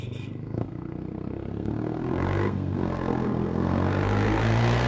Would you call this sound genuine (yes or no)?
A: no